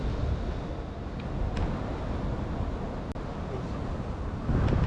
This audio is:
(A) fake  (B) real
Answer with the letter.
B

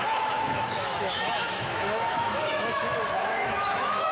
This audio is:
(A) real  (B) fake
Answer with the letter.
B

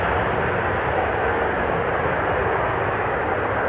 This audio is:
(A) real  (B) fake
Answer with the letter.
A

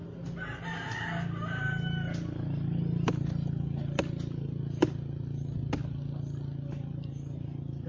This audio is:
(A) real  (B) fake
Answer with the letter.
A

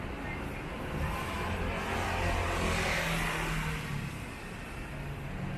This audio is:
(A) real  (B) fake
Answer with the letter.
A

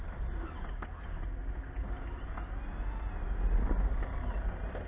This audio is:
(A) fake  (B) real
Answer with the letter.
B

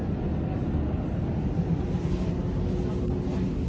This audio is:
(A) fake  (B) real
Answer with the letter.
B